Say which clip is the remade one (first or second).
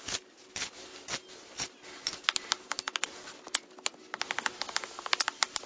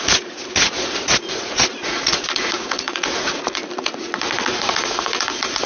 second